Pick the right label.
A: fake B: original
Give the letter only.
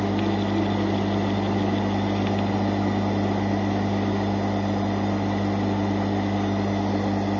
B